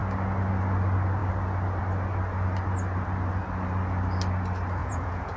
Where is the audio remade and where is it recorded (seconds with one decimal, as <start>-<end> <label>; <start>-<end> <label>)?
0.0-4.8 recorded; 4.8-5.4 remade